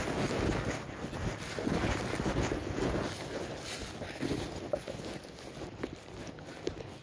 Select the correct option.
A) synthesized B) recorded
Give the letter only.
B